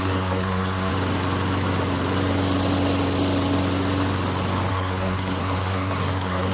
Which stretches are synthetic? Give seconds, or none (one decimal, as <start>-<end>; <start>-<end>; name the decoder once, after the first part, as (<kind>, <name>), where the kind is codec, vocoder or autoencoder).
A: 0.0-0.9 (codec, SNAC); 4.7-6.5